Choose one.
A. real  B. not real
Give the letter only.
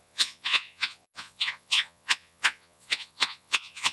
B